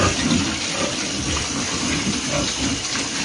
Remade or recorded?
recorded